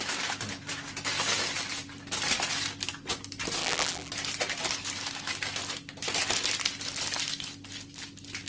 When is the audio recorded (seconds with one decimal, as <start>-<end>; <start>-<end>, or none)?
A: 0.0-3.6; 4.1-8.5